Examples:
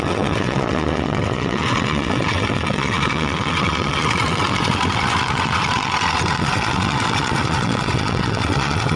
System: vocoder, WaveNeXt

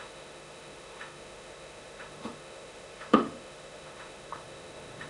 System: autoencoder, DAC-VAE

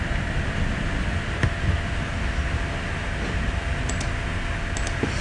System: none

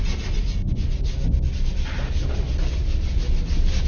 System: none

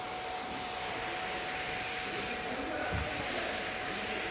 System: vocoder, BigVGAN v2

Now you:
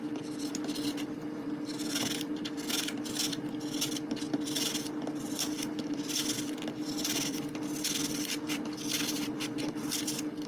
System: none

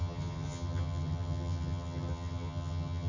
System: vocoder, HiFi-GAN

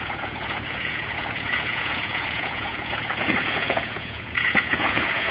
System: vocoder, Vocos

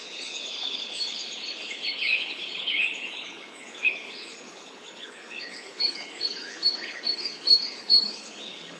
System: codec, HILCodec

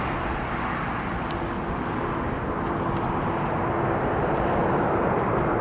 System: none